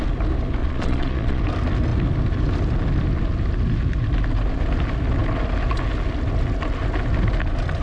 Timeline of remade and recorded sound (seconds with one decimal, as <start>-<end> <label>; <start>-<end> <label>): 0.0-0.6 recorded; 0.6-1.4 remade; 1.4-7.8 recorded